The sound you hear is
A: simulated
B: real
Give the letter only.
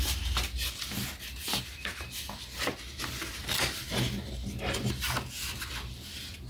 B